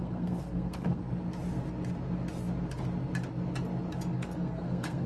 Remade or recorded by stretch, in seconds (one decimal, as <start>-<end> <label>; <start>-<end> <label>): 0.0-1.0 remade; 1.0-4.1 recorded; 4.1-5.1 remade

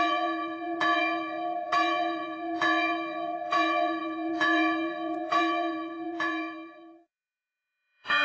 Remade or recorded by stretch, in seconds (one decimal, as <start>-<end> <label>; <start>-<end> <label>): 0.0-8.2 remade